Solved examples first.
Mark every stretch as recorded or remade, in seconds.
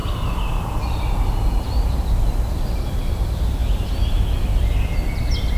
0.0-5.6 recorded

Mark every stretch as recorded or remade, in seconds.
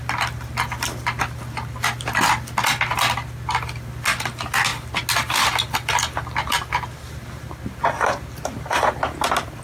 0.0-9.6 recorded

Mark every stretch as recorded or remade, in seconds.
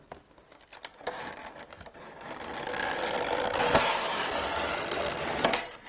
0.0-5.9 recorded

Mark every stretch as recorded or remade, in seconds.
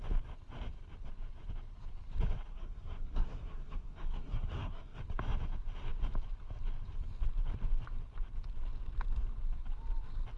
0.0-2.5 recorded; 2.5-5.0 remade; 5.0-10.4 recorded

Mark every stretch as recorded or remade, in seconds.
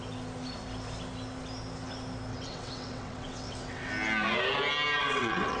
0.0-2.3 recorded; 2.3-3.9 remade; 3.9-5.0 recorded; 5.0-5.6 remade